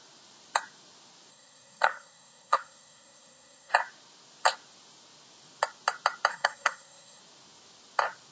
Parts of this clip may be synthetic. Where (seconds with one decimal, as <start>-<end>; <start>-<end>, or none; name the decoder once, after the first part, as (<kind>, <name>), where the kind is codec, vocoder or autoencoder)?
1.3-3.7 (codec, SNAC); 6.3-7.2